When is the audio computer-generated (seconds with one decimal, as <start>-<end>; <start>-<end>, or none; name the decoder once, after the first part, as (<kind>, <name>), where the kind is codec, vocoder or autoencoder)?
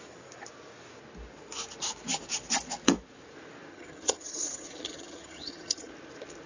3.7-5.9 (vocoder, HiFi-GAN)